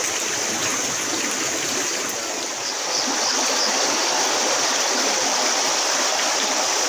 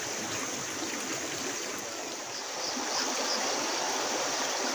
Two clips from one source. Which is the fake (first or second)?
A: second